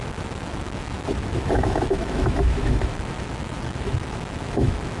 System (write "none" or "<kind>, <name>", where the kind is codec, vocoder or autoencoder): autoencoder, DAC-VAE